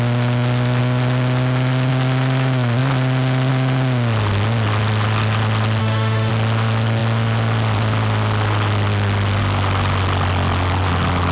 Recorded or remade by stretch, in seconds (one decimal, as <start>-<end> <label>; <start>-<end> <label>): 0.0-5.8 recorded; 5.8-6.3 remade; 6.3-11.3 recorded